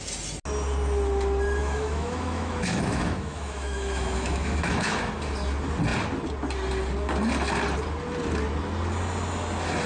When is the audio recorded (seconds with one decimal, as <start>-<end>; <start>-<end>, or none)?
0.0-1.6; 5.1-9.9